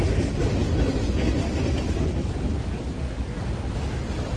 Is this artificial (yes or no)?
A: no